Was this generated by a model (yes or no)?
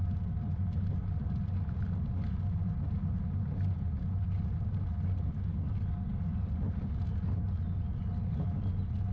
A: no